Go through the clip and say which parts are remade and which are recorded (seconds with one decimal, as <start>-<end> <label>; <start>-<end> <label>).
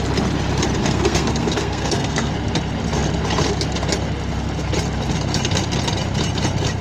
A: 0.0-0.8 recorded; 0.8-2.3 remade; 2.3-6.8 recorded